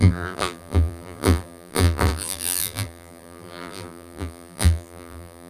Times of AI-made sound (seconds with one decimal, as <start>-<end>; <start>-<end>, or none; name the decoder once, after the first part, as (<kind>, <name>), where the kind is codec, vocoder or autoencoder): 0.0-5.5 (vocoder, BigVGAN v2)